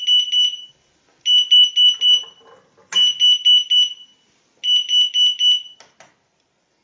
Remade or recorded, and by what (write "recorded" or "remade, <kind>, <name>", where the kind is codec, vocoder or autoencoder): recorded